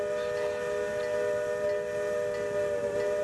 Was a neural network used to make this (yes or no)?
no